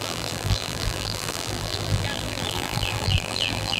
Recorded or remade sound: remade